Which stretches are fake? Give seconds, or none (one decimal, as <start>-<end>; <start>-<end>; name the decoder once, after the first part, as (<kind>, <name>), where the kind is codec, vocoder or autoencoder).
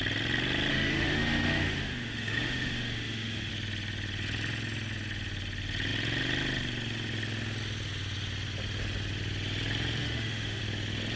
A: 0.7-3.5 (autoencoder, DAC-VAE); 10.0-10.6